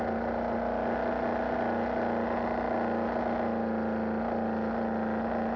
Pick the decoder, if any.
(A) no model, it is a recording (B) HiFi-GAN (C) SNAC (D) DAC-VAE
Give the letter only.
A